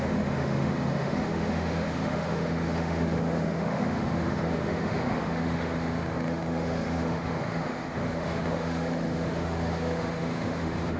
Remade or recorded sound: remade